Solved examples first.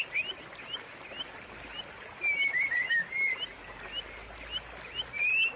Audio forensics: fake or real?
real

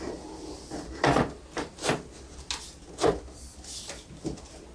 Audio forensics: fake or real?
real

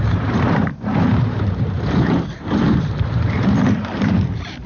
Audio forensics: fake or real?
fake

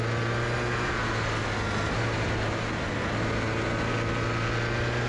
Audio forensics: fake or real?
real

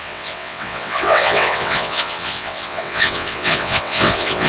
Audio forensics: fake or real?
fake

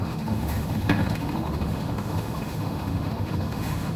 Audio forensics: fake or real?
fake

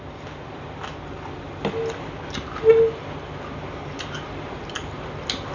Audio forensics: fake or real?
real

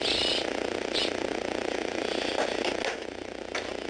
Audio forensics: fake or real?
real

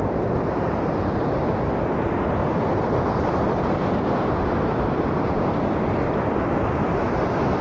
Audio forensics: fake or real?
real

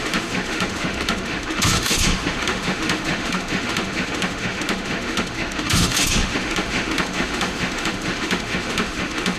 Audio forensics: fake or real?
fake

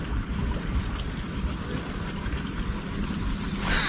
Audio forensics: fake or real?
real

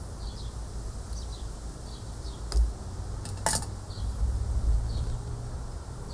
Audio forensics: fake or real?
real